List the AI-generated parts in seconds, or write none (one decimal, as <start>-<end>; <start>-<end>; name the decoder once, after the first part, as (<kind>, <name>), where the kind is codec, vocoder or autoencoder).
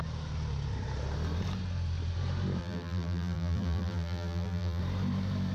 2.6-4.8 (vocoder, BigVGAN v2)